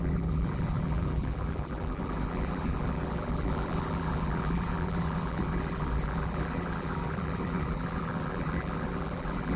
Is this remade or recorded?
remade